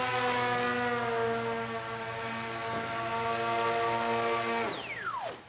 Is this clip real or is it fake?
real